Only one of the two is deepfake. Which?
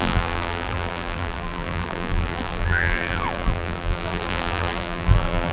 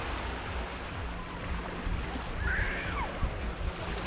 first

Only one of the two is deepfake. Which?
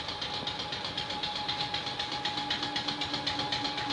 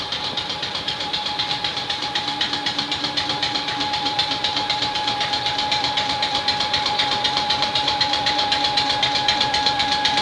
second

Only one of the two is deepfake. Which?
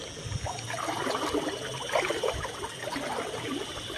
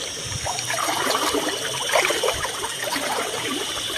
second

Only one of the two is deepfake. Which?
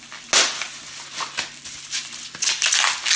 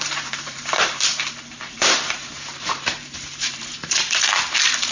second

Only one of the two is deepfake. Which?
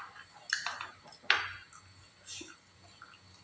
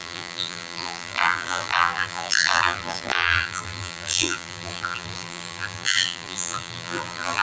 second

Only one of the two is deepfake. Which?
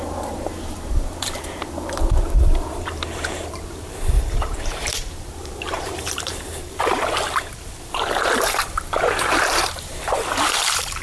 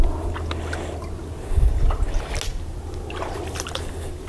first